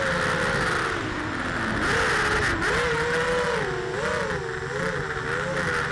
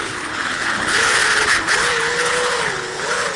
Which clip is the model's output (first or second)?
second